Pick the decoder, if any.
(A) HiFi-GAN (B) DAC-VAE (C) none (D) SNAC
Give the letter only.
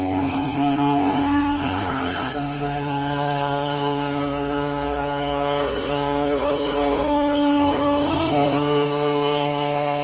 D